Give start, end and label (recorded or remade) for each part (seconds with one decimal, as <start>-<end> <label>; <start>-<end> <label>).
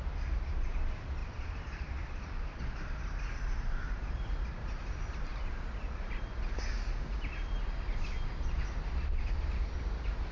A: 0.0-1.2 recorded; 1.2-3.4 remade; 3.4-10.3 recorded